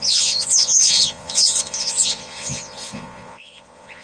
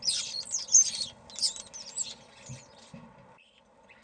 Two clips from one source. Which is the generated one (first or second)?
first